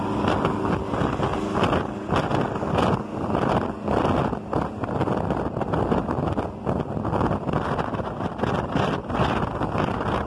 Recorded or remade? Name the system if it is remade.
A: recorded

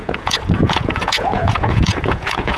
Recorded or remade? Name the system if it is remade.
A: remade, vocoder, Vocos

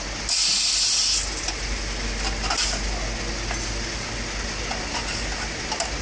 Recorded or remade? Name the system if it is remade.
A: recorded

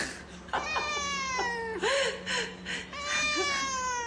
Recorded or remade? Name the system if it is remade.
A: recorded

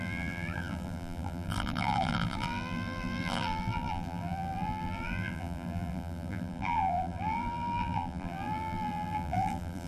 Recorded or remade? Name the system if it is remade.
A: remade, vocoder, BigVGAN v2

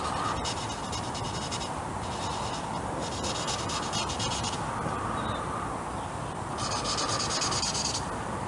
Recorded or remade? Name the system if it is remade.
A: recorded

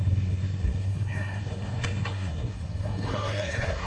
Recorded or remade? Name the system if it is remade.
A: remade, codec, SNAC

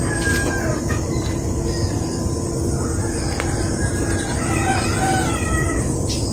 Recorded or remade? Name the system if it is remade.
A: remade, vocoder, BigVGAN v2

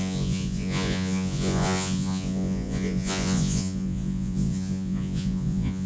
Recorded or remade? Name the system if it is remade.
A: remade, vocoder, Vocos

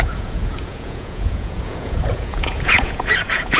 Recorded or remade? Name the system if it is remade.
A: remade, vocoder, Vocos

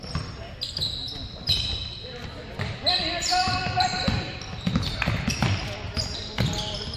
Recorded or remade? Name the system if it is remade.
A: recorded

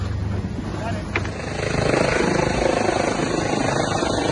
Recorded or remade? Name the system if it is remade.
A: recorded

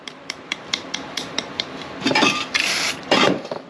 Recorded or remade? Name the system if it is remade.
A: remade, vocoder, BigVGAN v2